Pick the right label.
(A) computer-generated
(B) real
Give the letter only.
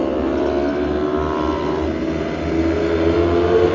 B